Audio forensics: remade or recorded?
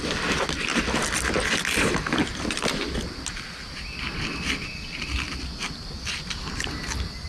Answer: recorded